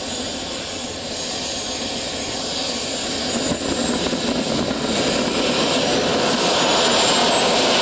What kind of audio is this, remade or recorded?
recorded